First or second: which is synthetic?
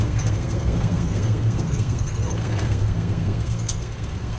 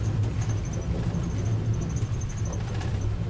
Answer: first